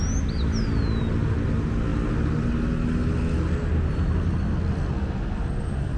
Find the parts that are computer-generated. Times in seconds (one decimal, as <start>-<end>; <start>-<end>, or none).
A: none